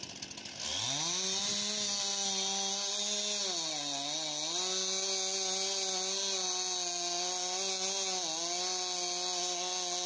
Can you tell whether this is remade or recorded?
recorded